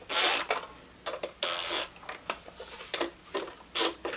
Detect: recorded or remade recorded